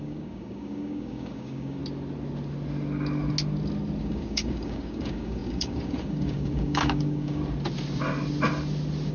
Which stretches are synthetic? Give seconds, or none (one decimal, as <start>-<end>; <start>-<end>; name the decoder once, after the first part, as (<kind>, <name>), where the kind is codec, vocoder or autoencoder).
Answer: 0.0-1.8 (codec, DAC); 4.0-7.4